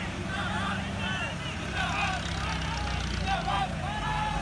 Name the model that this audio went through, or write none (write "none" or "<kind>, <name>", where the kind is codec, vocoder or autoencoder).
none